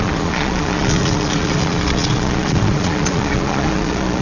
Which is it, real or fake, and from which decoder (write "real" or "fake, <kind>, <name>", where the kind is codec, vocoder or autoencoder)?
fake, vocoder, Vocos